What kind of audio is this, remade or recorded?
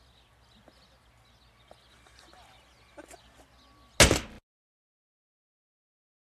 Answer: recorded